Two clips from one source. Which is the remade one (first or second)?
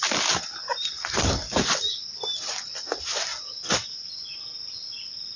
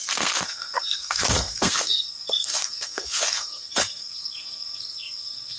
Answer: second